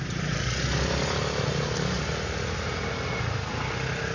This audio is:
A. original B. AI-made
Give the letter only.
A